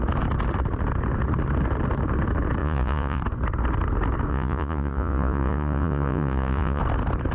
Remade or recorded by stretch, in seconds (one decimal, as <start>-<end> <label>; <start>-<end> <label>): 0.0-2.6 recorded; 2.6-3.2 remade; 3.2-4.3 recorded; 4.3-6.8 remade; 6.8-7.3 recorded